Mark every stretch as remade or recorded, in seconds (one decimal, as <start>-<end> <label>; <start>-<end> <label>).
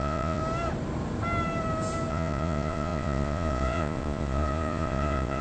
0.0-0.4 remade; 0.4-2.1 recorded; 2.1-5.4 remade